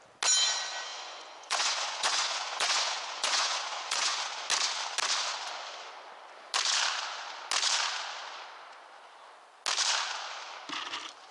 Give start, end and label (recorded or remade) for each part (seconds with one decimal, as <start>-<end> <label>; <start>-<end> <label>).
0.0-0.9 recorded; 0.9-4.2 remade; 4.2-11.3 recorded

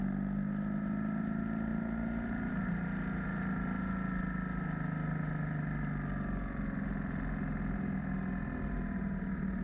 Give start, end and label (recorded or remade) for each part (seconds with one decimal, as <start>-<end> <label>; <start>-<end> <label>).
0.0-9.6 recorded

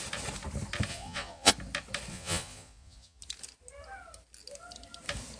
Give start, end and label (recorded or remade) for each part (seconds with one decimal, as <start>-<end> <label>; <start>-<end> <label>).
0.0-0.9 recorded; 0.9-1.5 remade; 1.5-2.1 recorded; 2.1-3.2 remade; 3.2-5.4 recorded

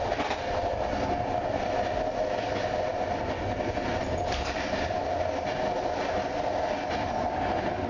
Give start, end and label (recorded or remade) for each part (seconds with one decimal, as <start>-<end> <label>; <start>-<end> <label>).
0.0-7.9 recorded

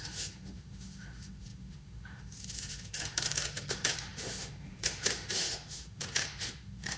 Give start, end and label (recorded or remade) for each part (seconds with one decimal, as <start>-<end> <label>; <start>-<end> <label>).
0.0-7.0 remade

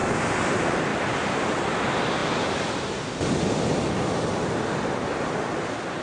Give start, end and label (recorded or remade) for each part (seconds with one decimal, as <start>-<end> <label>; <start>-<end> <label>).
0.0-0.9 recorded; 0.9-1.6 remade; 1.6-6.0 recorded

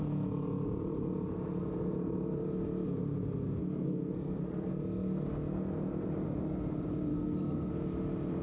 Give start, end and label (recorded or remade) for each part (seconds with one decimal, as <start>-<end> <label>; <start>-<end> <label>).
0.0-3.6 recorded; 3.6-4.7 remade; 4.7-7.1 recorded; 7.1-7.7 remade; 7.7-8.4 recorded